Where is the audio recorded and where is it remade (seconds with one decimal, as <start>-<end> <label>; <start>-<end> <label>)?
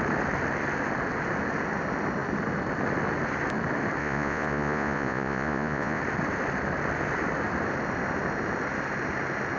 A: 0.0-4.0 recorded; 4.0-6.0 remade; 6.0-9.6 recorded